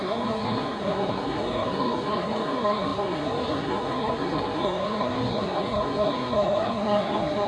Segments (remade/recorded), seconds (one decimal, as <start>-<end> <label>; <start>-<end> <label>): 0.0-7.5 remade

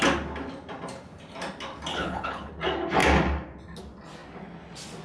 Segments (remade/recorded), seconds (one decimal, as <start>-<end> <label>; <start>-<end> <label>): 0.0-1.9 recorded; 1.9-2.5 remade; 2.5-5.0 recorded